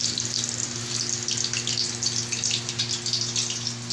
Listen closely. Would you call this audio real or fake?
real